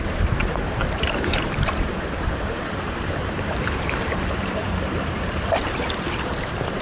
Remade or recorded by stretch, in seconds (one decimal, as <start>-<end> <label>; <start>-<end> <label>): 0.0-6.8 remade